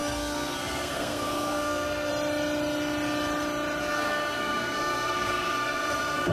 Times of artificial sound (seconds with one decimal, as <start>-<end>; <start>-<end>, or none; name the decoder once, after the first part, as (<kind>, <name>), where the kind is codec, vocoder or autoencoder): 0.0-2.1 (codec, SNAC); 3.8-6.3